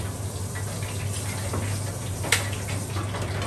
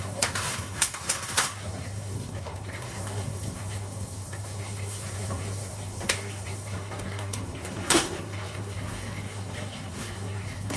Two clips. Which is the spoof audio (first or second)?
second